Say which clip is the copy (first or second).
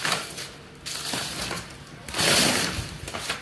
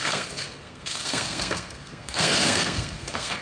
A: second